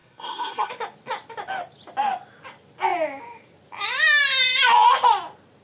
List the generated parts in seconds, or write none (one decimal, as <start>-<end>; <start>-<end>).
0.0-0.7